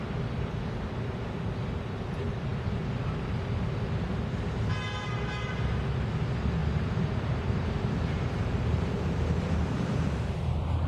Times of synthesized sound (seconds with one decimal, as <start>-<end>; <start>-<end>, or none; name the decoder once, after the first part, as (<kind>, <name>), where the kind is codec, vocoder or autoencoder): 6.6-10.3 (vocoder, BigVGAN v2)